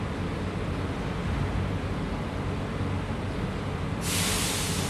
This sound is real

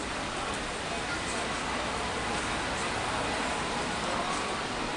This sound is real